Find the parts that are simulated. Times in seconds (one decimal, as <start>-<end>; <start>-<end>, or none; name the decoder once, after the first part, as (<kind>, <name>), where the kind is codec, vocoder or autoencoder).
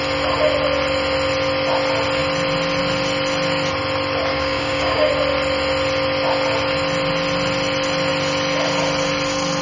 4.3-5.1 (codec, DAC)